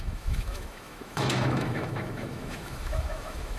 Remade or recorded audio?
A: remade